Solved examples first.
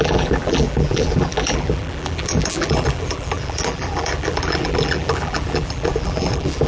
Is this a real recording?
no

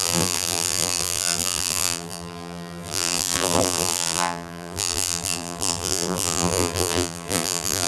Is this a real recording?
no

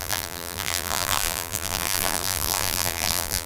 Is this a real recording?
no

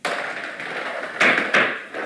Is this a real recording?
yes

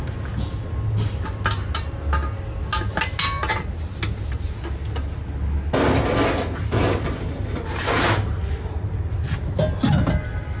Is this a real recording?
yes